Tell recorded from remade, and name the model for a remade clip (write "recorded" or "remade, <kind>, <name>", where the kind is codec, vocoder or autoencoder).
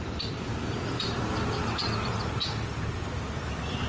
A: recorded